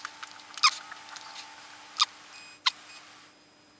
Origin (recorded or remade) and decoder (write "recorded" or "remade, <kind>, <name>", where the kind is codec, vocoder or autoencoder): recorded